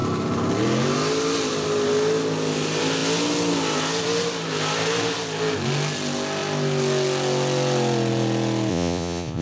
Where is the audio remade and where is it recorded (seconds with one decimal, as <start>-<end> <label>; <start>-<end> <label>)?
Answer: 0.0-8.7 recorded; 8.7-9.4 remade